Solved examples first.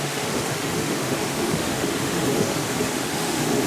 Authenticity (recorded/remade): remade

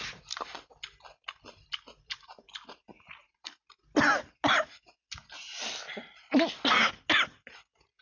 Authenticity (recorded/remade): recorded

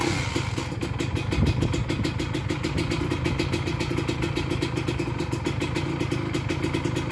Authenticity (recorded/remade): recorded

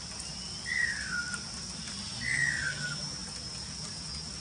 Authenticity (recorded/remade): recorded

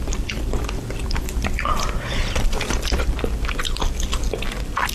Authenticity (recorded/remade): remade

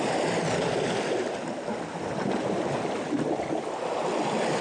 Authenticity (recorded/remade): recorded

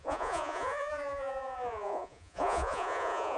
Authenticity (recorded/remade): remade